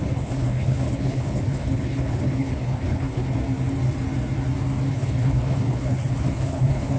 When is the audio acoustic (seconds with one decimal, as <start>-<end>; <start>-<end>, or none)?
3.4-4.9